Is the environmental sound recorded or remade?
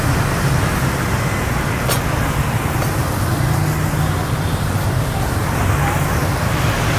recorded